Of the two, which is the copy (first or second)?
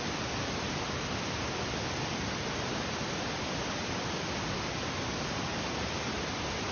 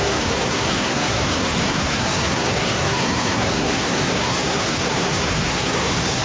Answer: second